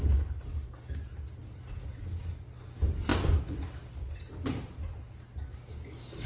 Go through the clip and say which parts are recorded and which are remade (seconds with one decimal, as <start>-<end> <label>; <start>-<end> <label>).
0.0-0.5 recorded; 0.5-1.0 remade; 1.0-6.3 recorded